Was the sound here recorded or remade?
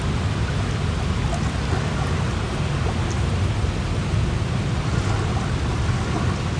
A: recorded